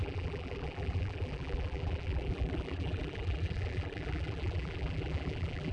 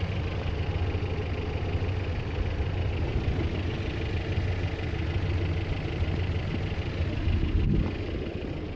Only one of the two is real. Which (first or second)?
second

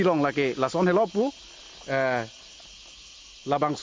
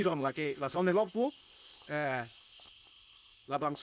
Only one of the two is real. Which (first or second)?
first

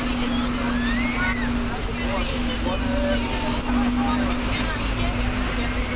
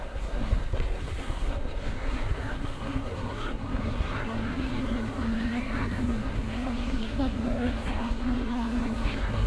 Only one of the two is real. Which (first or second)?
first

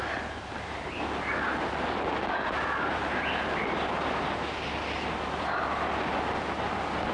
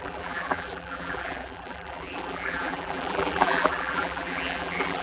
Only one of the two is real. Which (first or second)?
first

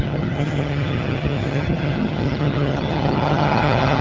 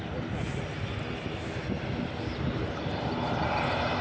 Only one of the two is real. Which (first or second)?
second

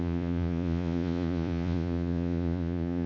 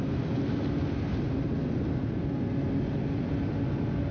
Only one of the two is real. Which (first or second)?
second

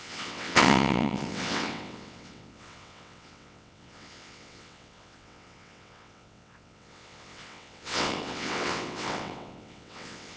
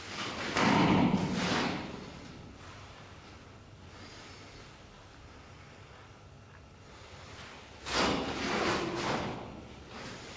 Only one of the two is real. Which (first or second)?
second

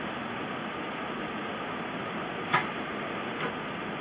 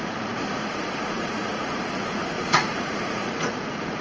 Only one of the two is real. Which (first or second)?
first